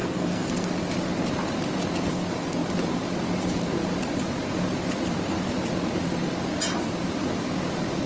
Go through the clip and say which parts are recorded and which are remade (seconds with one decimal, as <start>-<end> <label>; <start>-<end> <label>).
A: 0.0-0.7 remade; 0.7-8.1 recorded